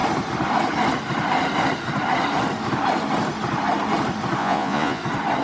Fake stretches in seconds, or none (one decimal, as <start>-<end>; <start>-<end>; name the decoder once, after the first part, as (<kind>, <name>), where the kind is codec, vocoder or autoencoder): 4.4-5.0 (vocoder, Vocos)